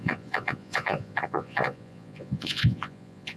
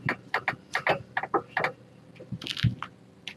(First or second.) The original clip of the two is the second